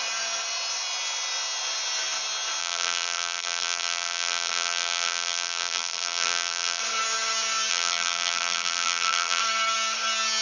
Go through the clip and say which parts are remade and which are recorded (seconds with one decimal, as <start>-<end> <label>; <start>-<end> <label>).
0.0-2.6 recorded; 2.6-6.8 remade; 6.8-7.7 recorded; 7.7-9.4 remade; 9.4-10.4 recorded